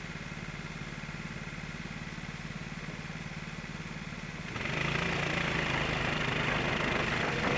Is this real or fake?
real